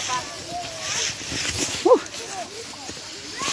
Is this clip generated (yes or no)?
no